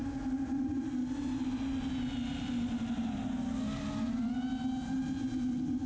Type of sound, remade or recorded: recorded